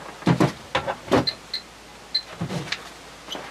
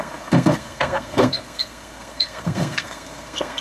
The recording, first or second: first